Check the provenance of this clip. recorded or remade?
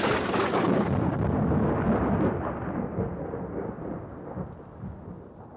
recorded